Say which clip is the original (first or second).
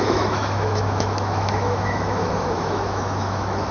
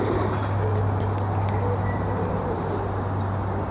second